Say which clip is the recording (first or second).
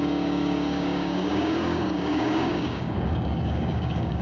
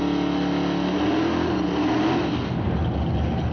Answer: second